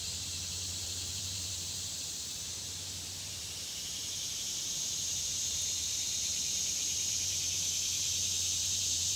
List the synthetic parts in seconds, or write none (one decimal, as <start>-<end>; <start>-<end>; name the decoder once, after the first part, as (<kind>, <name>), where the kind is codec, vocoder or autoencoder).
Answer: 0.0-5.3 (vocoder, BigVGAN v2); 6.4-9.2